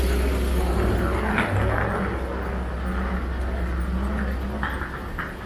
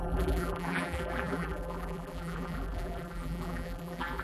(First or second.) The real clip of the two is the first